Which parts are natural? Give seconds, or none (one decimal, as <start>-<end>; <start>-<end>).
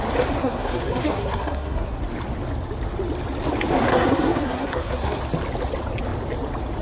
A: 0.0-0.4; 2.0-3.9; 5.2-6.8